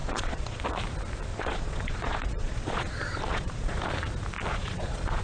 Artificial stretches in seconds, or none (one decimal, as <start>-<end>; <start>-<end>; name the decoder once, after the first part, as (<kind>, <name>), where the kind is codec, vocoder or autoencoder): 0.0-0.6 (vocoder, Vocos); 1.3-2.9; 3.3-3.8; 4.5-5.2